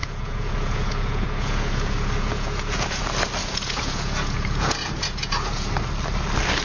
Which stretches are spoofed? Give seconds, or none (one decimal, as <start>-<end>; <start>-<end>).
0.0-3.0; 3.4-5.7